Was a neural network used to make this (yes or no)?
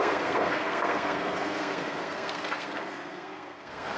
yes